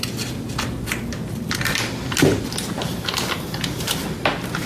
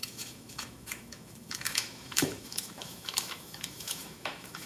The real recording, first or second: first